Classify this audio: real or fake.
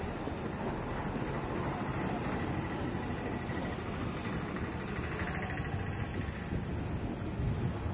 real